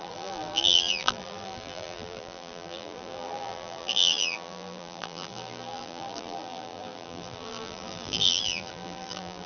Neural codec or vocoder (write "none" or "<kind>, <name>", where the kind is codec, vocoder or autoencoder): vocoder, BigVGAN v2